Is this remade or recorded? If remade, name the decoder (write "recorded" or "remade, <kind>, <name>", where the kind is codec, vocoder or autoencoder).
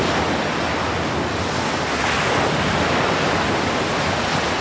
recorded